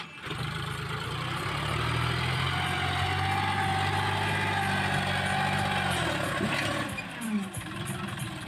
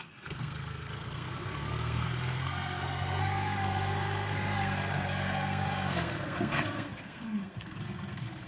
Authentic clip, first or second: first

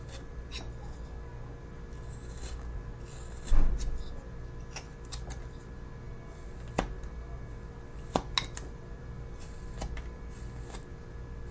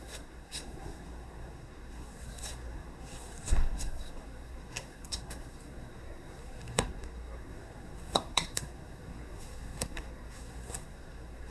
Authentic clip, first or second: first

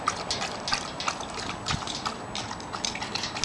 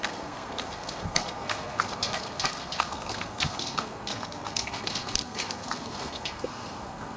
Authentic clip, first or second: first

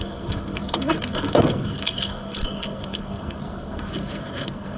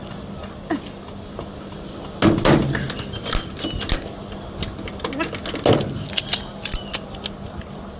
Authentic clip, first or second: second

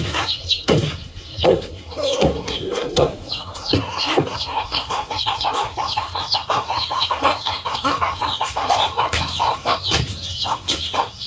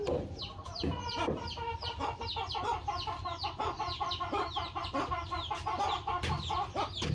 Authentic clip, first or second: second